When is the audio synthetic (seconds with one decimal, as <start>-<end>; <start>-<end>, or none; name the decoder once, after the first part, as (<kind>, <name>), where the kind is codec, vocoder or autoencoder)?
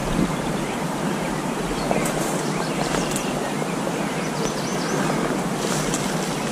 0.0-3.8 (vocoder, BigVGAN v2)